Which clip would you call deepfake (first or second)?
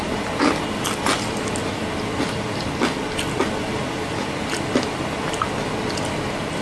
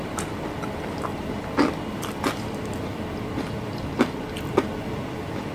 second